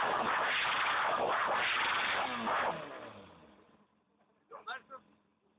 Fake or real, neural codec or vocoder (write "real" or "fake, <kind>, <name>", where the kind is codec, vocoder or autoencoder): real